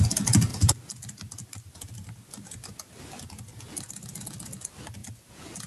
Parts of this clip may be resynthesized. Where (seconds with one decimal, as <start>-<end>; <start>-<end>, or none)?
none